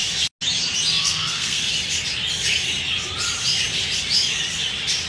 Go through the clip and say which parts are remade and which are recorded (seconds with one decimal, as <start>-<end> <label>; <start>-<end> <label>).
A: 0.0-1.0 recorded; 1.0-1.7 remade; 1.7-5.1 recorded